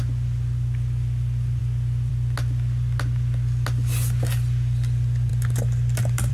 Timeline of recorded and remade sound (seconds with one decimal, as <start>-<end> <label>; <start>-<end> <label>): 0.0-6.3 recorded